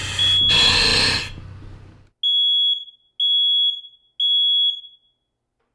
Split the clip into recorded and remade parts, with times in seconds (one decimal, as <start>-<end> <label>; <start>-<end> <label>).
0.0-5.7 recorded